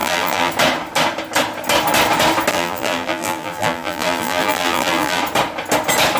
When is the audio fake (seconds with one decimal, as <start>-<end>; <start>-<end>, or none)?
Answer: 0.0-0.5; 2.5-5.2